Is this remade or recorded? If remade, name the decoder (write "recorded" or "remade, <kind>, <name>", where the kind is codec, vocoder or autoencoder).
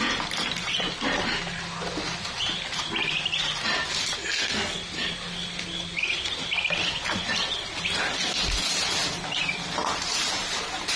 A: recorded